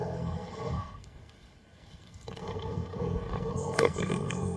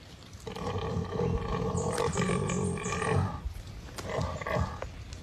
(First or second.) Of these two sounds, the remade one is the first